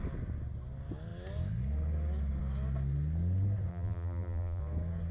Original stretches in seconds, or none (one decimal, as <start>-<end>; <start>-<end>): 0.0-3.7; 4.6-5.1

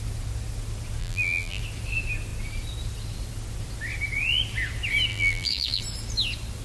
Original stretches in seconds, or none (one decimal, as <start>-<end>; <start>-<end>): 0.0-1.0; 1.6-5.1; 5.8-6.6

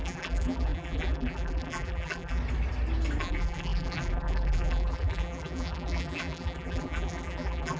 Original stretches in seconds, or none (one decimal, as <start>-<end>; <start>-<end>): 2.4-3.2